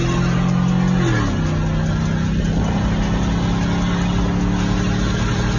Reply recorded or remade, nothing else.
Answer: recorded